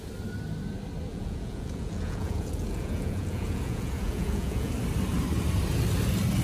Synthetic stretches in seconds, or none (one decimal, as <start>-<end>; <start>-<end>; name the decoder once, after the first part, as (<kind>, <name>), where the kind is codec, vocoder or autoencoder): 1.1-4.7 (vocoder, Vocos)